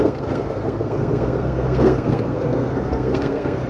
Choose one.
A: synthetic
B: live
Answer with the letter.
A